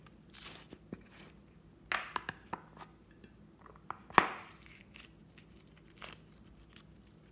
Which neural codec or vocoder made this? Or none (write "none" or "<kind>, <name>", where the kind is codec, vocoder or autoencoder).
none